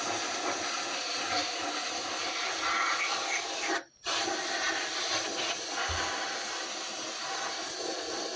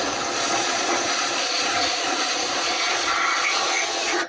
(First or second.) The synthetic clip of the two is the second